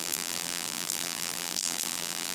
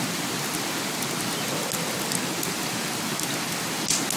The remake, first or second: first